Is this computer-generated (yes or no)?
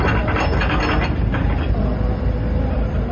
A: no